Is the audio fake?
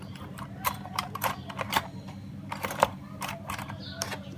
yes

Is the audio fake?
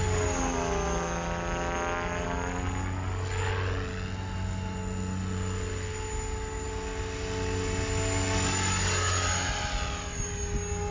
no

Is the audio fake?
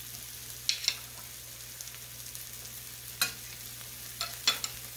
no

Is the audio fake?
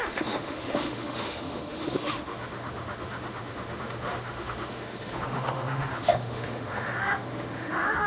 yes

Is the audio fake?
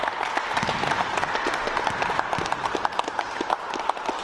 no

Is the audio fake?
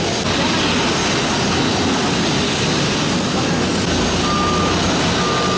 no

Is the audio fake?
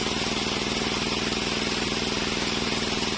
no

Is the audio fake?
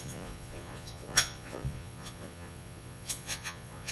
yes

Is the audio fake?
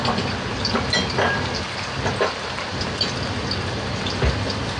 no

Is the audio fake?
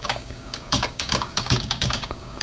yes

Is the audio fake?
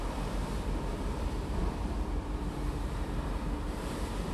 yes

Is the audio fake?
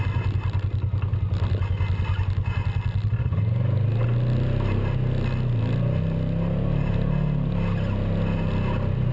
no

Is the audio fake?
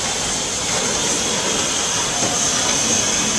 no